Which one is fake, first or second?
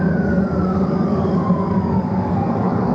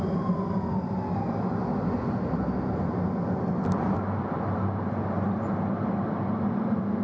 first